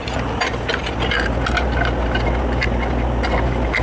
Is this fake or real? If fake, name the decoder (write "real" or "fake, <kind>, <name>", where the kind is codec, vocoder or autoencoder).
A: real